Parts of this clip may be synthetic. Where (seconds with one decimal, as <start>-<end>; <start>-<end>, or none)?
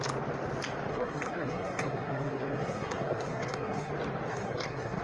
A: 0.9-3.9; 4.3-5.0